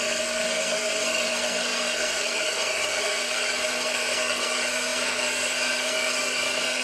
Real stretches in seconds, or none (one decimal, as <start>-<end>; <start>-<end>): none